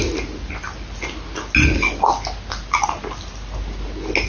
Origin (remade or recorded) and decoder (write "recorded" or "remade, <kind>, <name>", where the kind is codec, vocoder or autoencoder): recorded